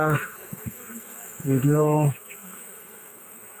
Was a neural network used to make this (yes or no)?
yes